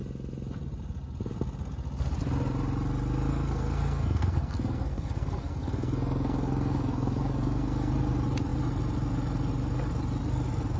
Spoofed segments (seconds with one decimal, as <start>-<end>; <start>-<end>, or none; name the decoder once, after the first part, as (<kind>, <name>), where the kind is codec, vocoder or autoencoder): 3.3-7.9 (codec, SNAC)